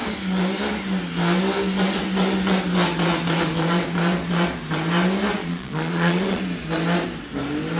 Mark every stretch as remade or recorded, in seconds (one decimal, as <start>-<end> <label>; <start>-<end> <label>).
0.0-5.4 recorded; 5.4-6.4 remade; 6.4-7.8 recorded